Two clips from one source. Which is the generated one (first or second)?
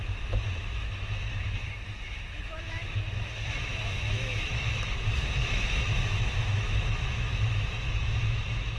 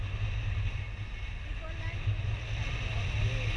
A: first